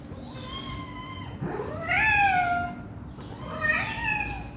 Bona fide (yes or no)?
yes